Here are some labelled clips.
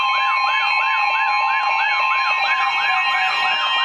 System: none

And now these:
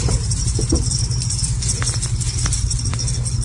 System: none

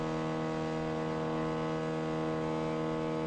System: none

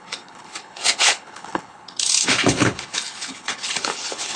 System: codec, HILCodec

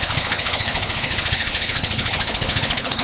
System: codec, HILCodec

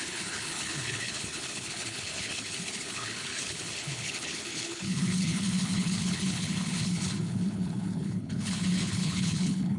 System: codec, HILCodec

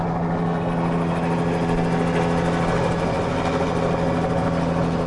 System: none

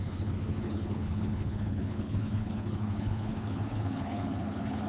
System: codec, HILCodec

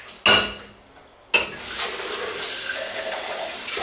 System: none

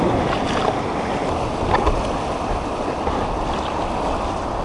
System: none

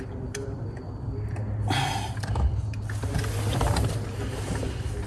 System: none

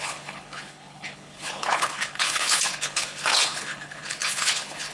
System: codec, HILCodec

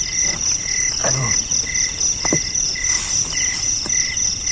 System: none